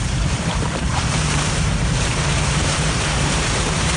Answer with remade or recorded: remade